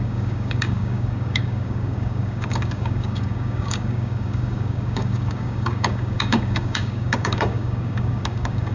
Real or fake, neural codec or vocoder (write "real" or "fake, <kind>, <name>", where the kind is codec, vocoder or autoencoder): fake, codec, DAC